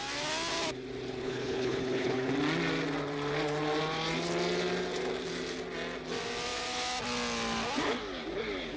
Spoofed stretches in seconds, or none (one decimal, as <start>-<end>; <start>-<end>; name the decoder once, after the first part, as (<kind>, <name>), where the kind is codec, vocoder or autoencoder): 1.2-2.3 (codec, HILCodec)